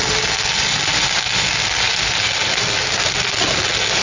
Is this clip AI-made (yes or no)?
no